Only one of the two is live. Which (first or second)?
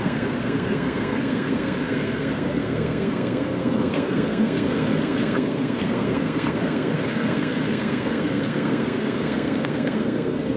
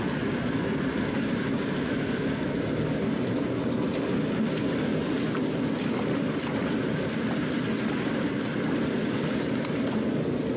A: second